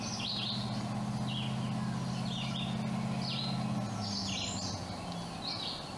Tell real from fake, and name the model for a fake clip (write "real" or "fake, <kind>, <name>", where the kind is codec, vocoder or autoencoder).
real